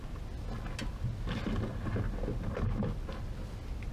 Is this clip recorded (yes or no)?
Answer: yes